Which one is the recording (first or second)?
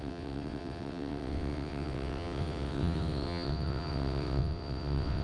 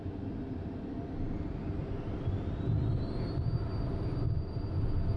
second